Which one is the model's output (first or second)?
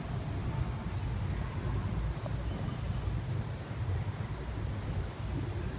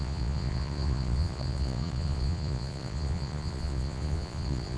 second